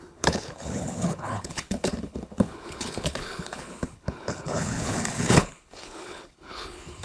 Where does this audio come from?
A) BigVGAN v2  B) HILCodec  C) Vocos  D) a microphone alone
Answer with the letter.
B